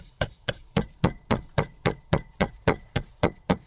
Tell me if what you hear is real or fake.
fake